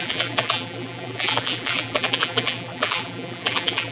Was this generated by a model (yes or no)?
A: yes